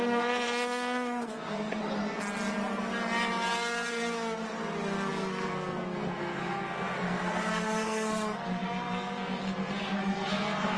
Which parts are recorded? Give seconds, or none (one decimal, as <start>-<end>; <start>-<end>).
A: 1.8-5.1

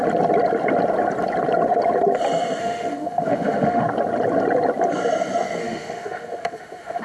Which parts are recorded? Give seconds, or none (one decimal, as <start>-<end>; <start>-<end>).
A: 0.0-2.6; 3.8-5.6